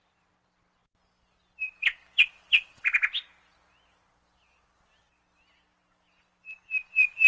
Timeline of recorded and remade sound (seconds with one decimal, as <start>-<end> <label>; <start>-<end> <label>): 0.0-7.3 recorded